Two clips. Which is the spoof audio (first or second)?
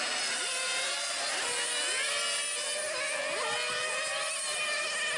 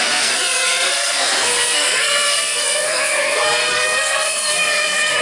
second